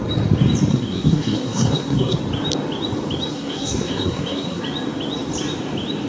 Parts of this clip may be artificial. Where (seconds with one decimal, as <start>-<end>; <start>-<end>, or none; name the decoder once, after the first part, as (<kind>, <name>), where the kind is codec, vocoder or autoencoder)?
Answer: 0.7-2.2 (codec, SNAC); 3.3-4.6